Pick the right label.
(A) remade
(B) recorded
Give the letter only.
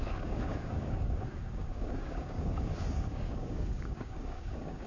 A